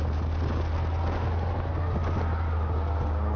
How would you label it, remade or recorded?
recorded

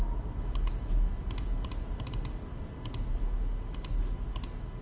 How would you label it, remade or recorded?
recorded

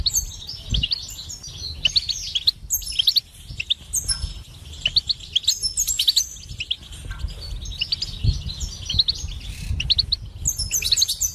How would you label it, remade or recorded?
recorded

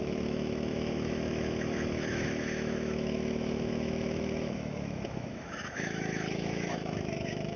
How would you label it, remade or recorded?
remade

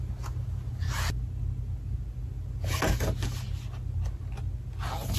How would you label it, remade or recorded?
recorded